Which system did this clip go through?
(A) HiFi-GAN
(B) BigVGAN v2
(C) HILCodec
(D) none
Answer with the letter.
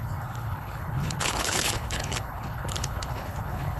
C